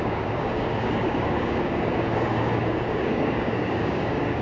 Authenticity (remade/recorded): remade